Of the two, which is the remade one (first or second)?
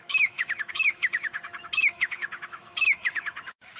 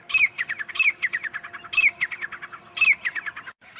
first